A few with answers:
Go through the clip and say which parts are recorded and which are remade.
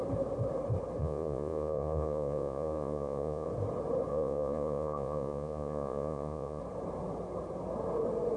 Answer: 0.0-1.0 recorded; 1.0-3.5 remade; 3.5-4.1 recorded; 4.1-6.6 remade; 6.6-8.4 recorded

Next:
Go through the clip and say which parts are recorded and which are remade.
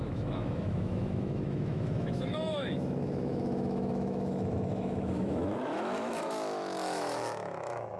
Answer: 0.0-8.0 remade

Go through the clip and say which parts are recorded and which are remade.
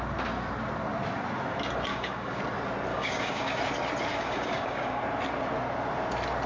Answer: 0.0-1.9 recorded; 1.9-2.4 remade; 2.4-2.9 recorded; 2.9-3.6 remade; 3.6-4.1 recorded; 4.1-5.0 remade; 5.0-6.5 recorded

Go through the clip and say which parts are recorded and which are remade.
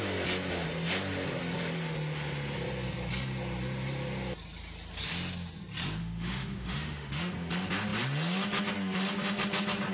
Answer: 0.0-6.0 recorded; 6.0-7.3 remade; 7.3-9.9 recorded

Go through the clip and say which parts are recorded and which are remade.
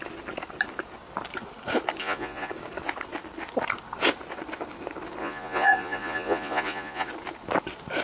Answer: 0.0-2.0 recorded; 2.0-2.5 remade; 2.5-5.2 recorded; 5.2-7.1 remade; 7.1-8.0 recorded